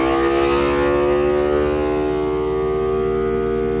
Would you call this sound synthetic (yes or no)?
no